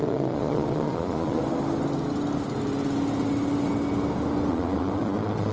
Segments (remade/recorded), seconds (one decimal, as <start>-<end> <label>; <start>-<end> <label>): 0.0-1.4 remade; 1.4-4.5 recorded; 4.5-5.5 remade